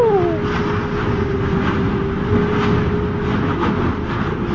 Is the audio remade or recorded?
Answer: recorded